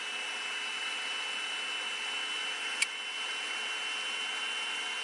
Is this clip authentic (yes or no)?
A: yes